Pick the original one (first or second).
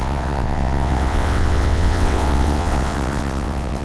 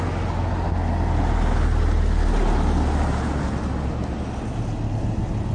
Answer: second